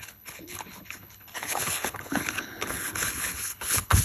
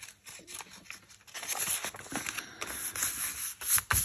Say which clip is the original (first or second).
second